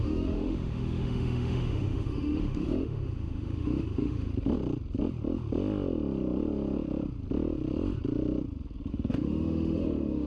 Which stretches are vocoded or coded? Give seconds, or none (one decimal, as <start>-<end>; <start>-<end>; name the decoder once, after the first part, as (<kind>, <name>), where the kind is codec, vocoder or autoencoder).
0.0-4.3 (autoencoder, DAC-VAE); 8.9-10.3